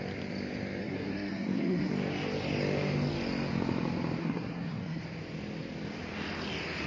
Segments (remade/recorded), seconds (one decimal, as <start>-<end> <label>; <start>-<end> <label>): 0.0-0.8 recorded; 0.8-1.9 remade; 1.9-4.2 recorded; 4.2-5.0 remade; 5.0-6.9 recorded

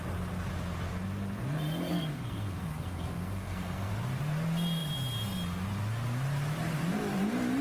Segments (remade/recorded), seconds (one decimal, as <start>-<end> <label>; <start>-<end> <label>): 0.0-1.9 recorded; 1.9-3.9 remade; 3.9-7.6 recorded

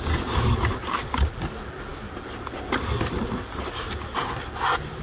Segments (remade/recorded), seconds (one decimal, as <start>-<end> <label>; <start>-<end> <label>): 0.0-5.0 recorded